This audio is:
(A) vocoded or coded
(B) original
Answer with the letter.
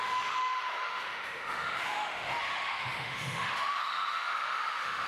A